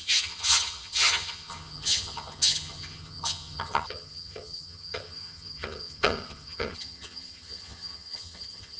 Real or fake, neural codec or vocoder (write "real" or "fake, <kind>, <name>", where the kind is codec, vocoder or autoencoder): fake, vocoder, HiFi-GAN